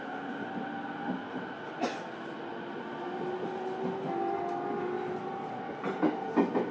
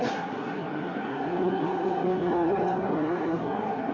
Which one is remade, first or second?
second